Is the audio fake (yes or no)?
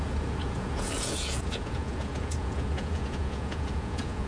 yes